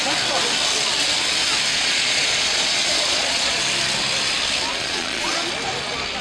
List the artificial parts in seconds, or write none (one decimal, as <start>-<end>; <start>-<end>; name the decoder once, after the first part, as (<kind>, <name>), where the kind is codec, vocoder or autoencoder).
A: 1.7-3.6 (vocoder, Vocos); 4.7-5.5